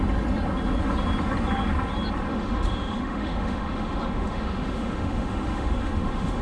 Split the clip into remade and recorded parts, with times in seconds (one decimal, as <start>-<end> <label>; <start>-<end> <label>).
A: 0.0-2.3 recorded; 2.3-6.4 remade